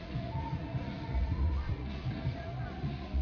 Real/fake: fake